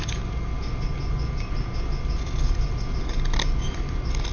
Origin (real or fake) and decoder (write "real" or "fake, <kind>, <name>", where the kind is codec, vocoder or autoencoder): real